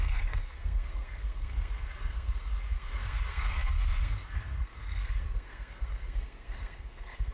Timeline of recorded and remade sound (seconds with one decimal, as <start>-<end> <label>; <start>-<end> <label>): 0.0-7.3 remade